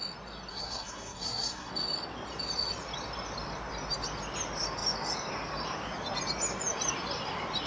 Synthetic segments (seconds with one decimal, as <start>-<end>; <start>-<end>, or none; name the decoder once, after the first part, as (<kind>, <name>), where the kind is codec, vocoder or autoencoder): 0.5-1.7 (codec, SNAC)